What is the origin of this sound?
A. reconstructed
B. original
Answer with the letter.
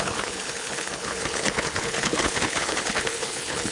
A